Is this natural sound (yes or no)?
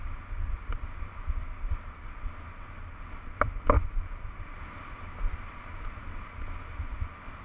yes